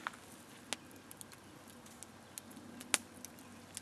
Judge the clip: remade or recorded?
recorded